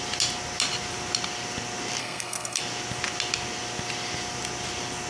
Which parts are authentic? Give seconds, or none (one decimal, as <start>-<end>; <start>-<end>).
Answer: 0.0-2.0; 2.6-5.1